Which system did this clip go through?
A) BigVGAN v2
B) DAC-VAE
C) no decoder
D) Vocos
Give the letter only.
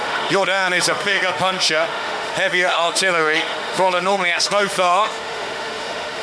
B